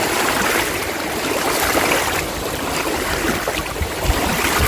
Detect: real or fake fake